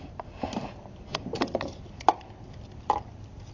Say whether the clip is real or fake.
real